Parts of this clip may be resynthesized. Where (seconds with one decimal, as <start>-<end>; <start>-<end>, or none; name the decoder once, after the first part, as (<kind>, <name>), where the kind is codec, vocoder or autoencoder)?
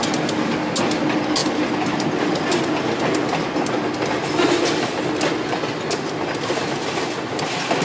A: none